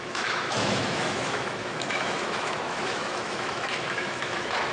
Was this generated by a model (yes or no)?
yes